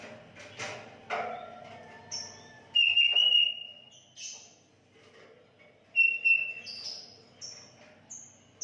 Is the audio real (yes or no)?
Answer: yes